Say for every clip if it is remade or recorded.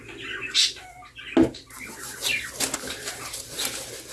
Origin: recorded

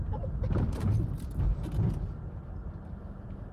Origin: recorded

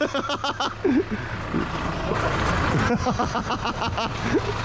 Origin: recorded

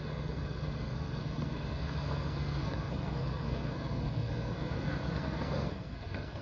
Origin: remade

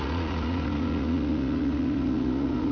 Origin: remade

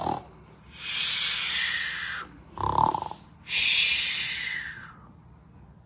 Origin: recorded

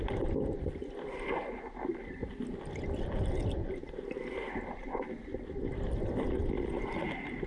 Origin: recorded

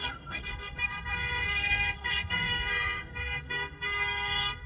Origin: remade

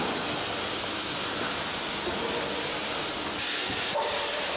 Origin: recorded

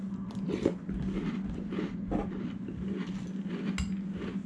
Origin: recorded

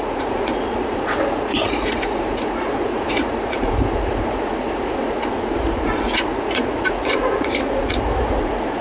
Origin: remade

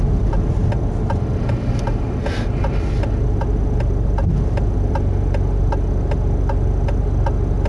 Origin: recorded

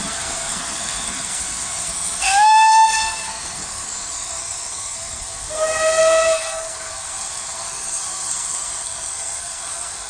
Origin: remade